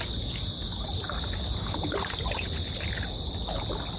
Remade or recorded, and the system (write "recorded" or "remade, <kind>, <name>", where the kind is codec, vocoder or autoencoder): recorded